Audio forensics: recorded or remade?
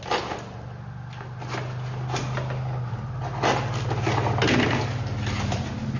recorded